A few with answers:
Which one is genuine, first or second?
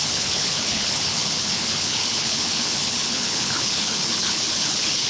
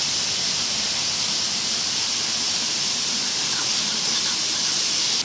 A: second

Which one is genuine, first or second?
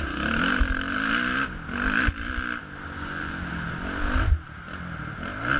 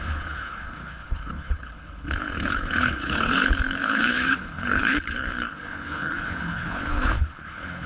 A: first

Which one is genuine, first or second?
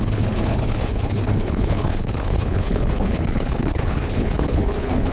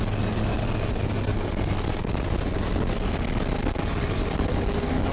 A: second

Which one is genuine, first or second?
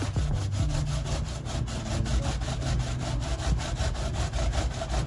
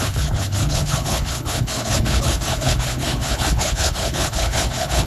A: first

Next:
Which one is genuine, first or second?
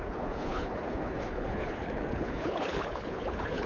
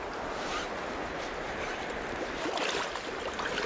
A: second